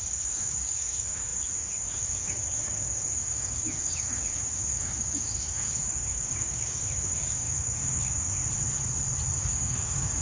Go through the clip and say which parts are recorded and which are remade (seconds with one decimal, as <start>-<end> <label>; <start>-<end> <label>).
0.0-8.4 remade; 8.4-9.4 recorded; 9.4-10.2 remade